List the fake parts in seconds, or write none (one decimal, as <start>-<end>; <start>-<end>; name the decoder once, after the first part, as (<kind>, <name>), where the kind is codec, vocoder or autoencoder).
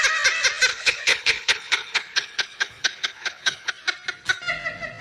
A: 0.7-3.7 (codec, HILCodec)